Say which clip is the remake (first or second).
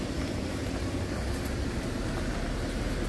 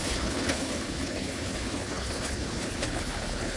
second